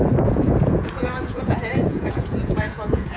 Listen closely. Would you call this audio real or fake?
fake